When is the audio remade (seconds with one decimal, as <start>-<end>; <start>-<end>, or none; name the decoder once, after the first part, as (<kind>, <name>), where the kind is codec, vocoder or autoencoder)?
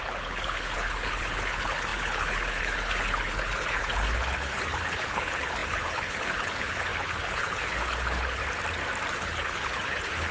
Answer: 0.0-8.4 (codec, HILCodec); 9.1-10.3